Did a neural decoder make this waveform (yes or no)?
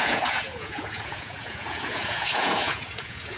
yes